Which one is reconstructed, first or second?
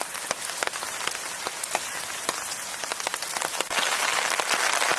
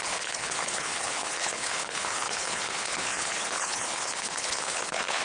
second